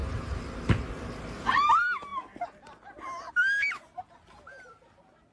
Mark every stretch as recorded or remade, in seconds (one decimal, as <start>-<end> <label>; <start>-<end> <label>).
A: 0.0-5.3 recorded